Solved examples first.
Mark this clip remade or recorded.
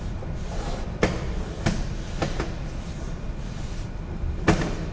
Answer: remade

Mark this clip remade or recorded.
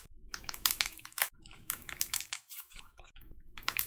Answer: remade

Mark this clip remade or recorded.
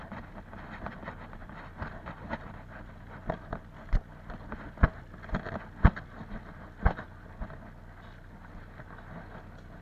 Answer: recorded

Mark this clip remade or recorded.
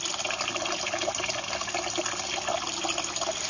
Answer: recorded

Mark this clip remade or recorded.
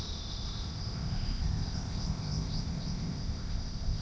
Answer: remade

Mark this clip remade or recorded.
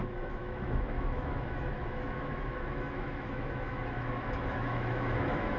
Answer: remade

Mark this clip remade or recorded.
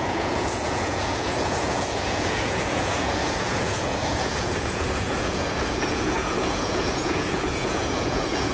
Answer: remade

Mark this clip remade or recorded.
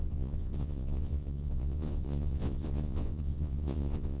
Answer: remade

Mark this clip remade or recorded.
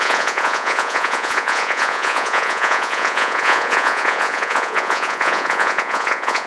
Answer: remade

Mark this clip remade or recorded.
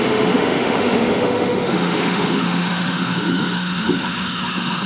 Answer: remade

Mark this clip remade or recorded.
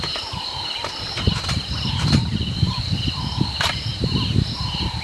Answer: remade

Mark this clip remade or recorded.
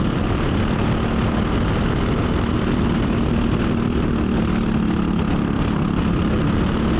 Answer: recorded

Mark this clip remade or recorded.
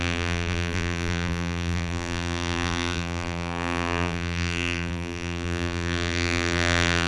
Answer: remade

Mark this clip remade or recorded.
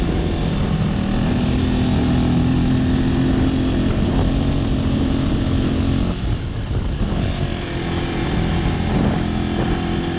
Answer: recorded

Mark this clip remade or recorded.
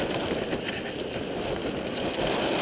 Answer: recorded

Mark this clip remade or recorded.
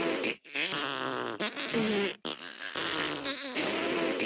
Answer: recorded